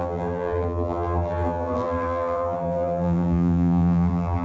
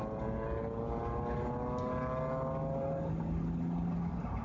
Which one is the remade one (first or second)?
first